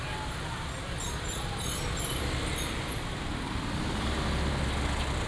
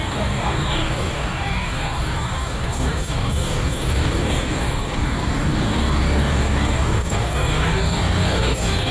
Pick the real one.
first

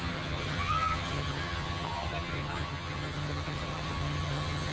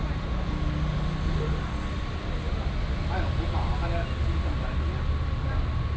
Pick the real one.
second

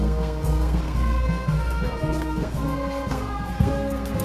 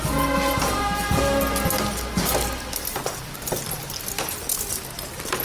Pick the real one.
second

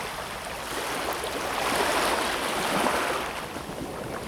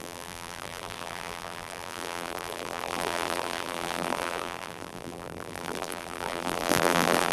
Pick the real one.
first